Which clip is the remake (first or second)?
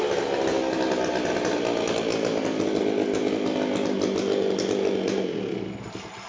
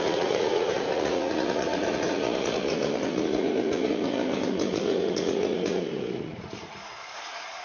second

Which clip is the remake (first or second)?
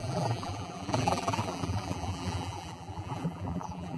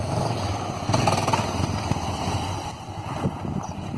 first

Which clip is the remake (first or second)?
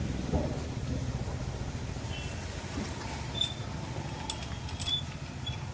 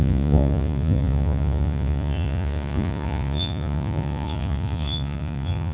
second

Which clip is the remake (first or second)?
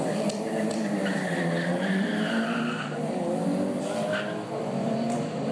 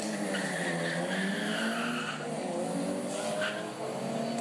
first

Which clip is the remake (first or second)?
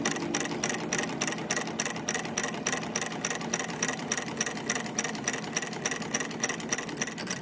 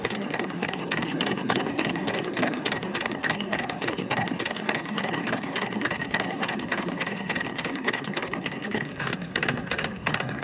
second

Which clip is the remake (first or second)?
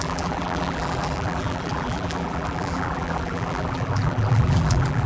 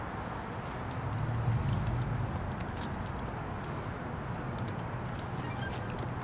first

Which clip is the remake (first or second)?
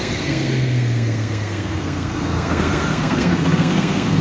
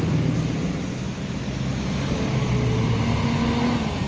first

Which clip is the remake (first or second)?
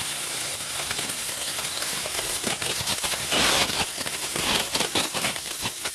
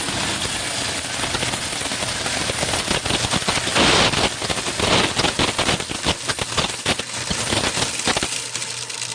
first